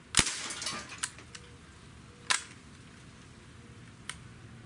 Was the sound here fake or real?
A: real